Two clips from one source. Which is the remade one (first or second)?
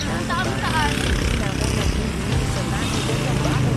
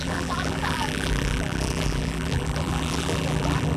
second